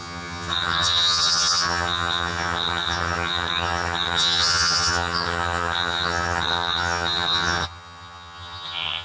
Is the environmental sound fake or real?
fake